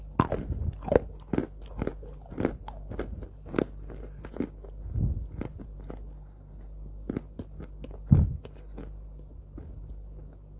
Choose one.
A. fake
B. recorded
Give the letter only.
B